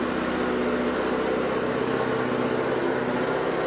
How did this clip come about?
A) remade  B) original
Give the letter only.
B